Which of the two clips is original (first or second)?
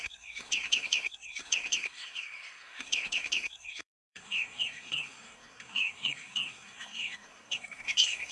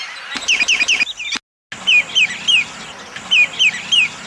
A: second